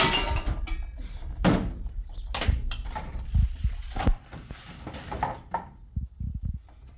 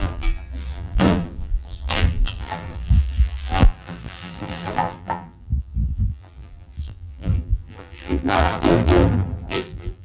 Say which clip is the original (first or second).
first